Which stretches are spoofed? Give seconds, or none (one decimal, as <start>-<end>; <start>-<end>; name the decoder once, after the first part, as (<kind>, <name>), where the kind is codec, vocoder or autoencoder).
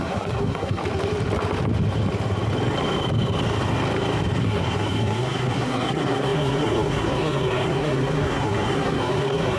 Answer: 0.0-0.8 (codec, SNAC); 4.4-9.6